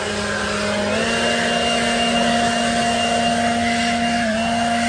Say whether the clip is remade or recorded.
recorded